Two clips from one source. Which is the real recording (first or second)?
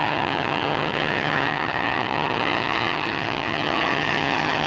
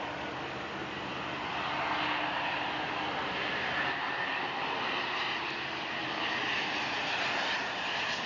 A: second